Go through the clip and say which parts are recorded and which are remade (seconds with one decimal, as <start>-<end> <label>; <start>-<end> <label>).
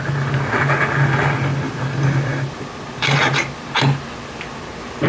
0.0-5.1 recorded